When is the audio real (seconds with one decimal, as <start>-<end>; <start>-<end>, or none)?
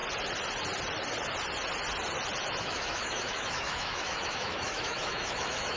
0.0-2.6